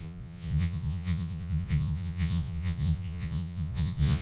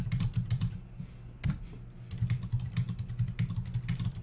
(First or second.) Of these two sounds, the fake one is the first